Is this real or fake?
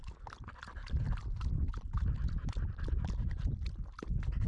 real